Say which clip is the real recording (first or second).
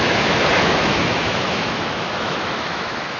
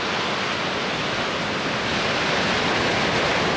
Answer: second